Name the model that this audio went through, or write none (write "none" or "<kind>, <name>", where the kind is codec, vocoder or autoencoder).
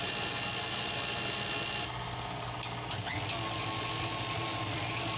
none